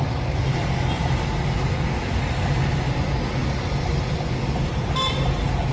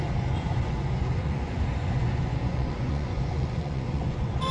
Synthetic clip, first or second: second